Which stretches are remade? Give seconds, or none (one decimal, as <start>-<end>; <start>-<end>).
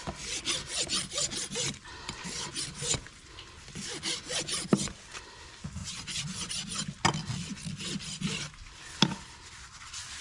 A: 5.8-6.5